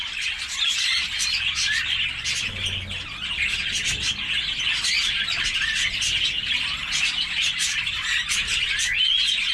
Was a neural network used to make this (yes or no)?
no